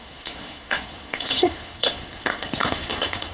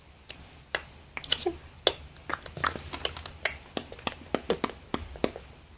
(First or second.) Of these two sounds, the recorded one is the second